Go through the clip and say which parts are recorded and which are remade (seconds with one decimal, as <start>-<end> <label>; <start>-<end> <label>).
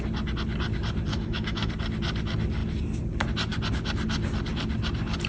0.0-1.1 recorded; 1.1-1.7 remade; 1.7-5.3 recorded